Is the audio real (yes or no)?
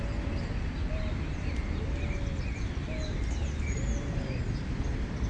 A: yes